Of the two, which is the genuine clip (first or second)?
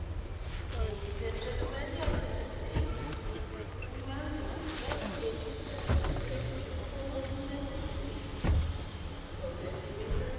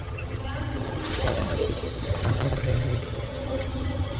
first